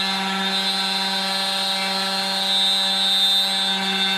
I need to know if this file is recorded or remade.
recorded